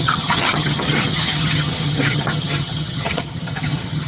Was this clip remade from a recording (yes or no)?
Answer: yes